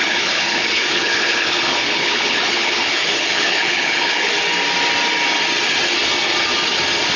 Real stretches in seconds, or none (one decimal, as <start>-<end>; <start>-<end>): 4.3-7.2